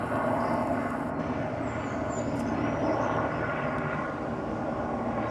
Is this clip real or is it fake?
real